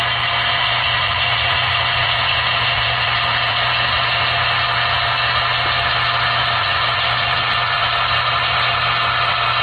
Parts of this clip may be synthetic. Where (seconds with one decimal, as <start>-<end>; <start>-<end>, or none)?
0.5-4.2; 6.6-7.8